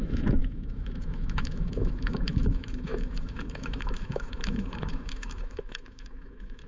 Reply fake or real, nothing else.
fake